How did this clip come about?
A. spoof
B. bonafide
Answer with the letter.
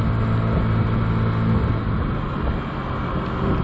B